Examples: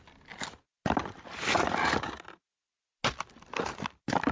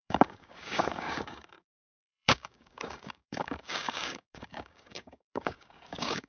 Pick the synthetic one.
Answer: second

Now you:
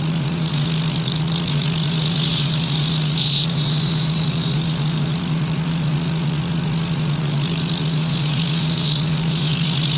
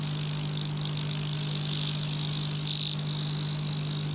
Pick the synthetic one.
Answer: first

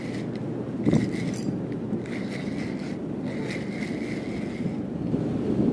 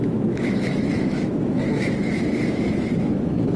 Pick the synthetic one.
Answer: second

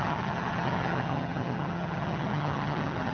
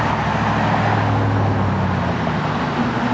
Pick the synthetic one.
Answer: first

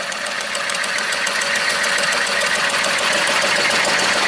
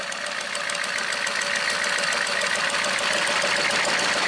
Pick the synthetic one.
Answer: first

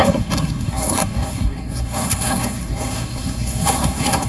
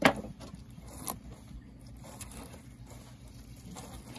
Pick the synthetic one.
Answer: first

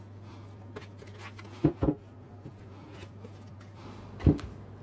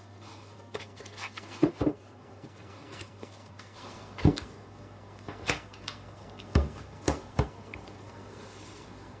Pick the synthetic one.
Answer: second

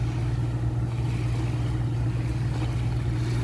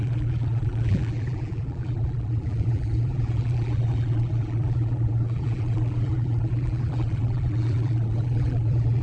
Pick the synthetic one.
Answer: second